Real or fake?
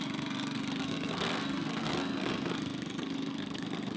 fake